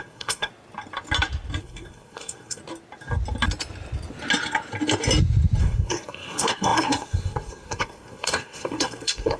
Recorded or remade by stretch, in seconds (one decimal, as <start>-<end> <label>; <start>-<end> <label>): 0.0-0.5 remade; 0.5-1.6 recorded; 1.6-2.6 remade; 2.6-5.6 recorded; 5.6-9.4 remade